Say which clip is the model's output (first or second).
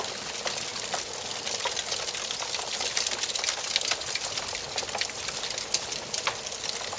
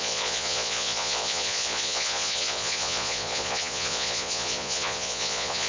second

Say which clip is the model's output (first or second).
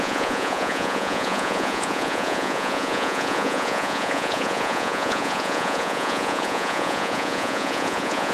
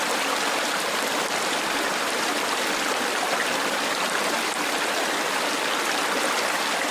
first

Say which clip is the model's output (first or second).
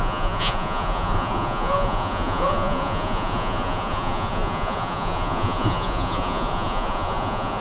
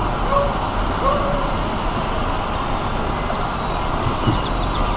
first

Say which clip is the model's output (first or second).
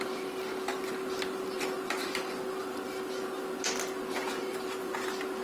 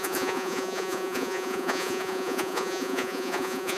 second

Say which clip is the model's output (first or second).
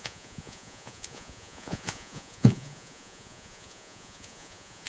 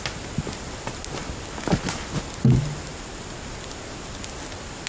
first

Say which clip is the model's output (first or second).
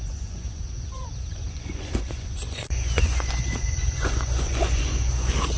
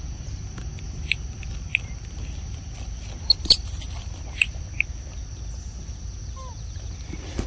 first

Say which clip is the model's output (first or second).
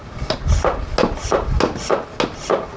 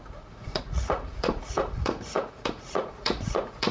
second